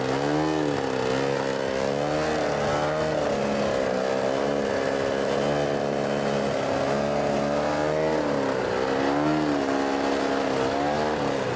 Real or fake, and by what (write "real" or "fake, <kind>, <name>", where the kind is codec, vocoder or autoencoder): real